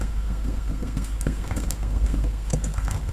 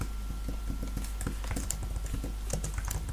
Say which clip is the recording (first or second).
second